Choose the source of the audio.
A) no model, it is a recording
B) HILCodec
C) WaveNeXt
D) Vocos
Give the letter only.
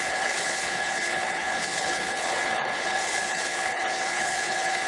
B